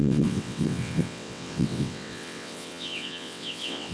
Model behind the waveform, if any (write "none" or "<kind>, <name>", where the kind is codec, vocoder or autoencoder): vocoder, WaveNeXt